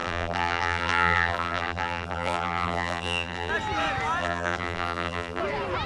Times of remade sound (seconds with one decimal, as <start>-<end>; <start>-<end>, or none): 0.0-3.5; 4.2-5.4